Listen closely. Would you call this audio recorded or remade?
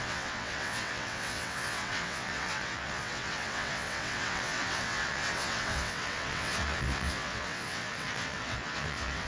remade